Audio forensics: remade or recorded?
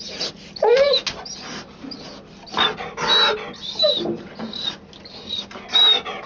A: recorded